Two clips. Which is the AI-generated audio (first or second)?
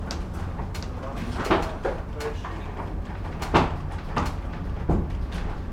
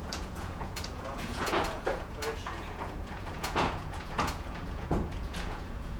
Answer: second